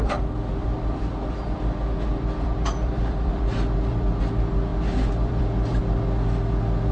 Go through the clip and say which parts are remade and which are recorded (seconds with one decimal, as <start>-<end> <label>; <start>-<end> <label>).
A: 0.0-0.6 recorded; 0.6-4.2 remade; 4.2-4.7 recorded; 4.7-5.8 remade; 5.8-6.9 recorded